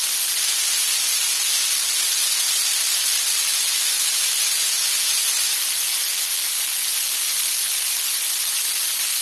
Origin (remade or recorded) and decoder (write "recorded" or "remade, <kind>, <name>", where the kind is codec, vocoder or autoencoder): recorded